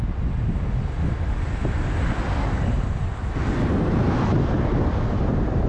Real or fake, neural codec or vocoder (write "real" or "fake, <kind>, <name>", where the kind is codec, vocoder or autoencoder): real